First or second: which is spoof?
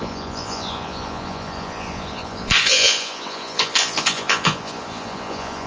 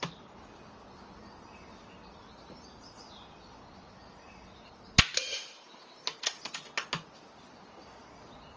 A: first